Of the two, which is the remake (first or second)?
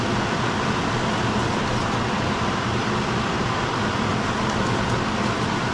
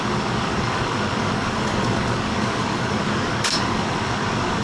second